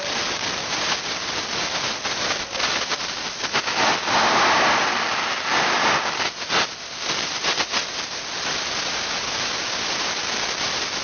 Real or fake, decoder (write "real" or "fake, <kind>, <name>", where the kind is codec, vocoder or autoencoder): real